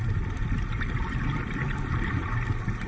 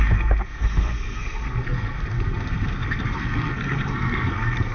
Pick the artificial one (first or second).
second